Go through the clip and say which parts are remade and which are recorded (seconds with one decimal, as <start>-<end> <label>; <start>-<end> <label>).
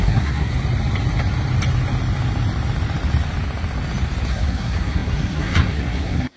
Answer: 0.0-0.5 remade; 0.5-4.3 recorded; 4.3-6.4 remade